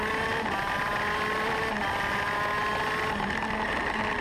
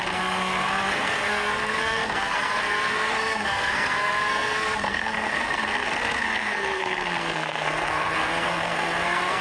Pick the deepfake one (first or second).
second